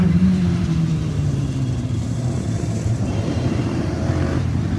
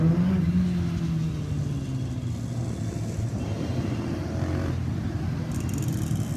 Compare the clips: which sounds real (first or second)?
second